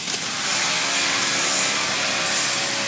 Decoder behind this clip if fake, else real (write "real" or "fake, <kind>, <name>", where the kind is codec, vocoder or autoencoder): real